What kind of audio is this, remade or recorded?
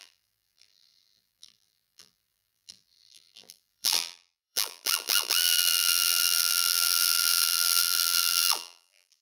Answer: remade